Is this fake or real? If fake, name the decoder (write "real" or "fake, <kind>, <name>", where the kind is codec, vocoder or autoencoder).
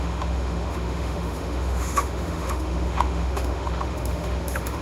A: fake, autoencoder, DAC-VAE